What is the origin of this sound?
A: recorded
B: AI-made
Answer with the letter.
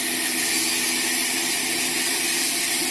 A